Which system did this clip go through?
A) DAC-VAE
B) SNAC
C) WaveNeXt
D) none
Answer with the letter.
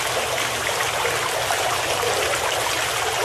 D